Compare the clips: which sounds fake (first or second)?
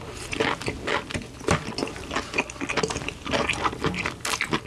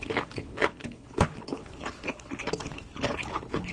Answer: second